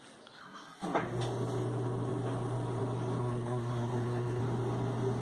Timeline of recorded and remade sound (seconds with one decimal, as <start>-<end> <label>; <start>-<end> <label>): 0.0-0.4 recorded; 0.4-1.0 remade; 1.0-3.2 recorded; 3.2-4.4 remade; 4.4-5.2 recorded